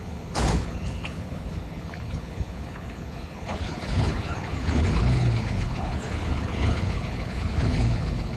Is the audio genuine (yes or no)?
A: no